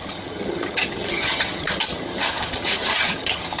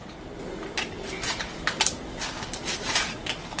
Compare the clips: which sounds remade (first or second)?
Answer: first